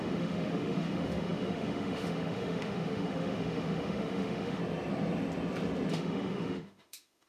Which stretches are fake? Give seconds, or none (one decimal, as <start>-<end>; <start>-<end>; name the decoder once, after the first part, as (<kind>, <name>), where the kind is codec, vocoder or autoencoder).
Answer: 0.0-4.6 (autoencoder, DAC-VAE); 5.9-7.3